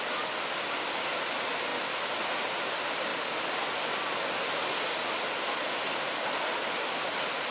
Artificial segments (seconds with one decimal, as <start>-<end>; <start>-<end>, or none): none

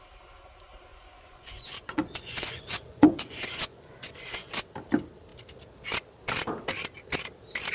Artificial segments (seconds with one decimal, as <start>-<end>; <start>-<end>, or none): 0.9-4.5

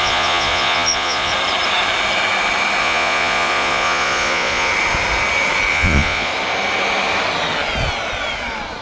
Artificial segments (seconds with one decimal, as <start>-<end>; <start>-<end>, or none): 0.0-1.3; 2.8-4.7; 5.7-6.3

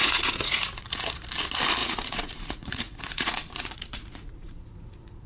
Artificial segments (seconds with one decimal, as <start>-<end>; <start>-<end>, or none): 0.0-1.1; 1.8-5.3

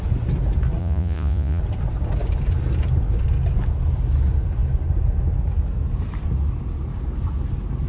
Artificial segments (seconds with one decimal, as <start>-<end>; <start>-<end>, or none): 0.8-1.6

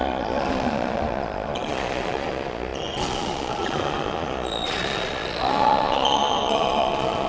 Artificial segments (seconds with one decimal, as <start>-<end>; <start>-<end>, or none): 0.0-7.3

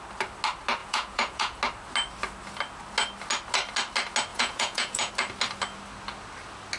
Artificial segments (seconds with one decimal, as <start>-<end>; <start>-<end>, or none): 0.8-1.6; 4.3-5.1

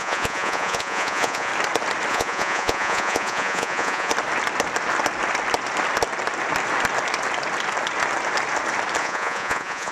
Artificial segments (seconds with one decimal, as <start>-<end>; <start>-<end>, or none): 0.0-1.5; 2.1-4.1; 9.0-9.9